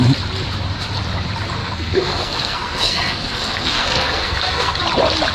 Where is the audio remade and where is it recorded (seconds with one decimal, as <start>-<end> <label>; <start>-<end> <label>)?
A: 0.0-1.6 recorded; 1.6-4.8 remade; 4.8-5.3 recorded